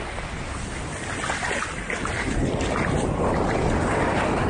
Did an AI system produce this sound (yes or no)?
no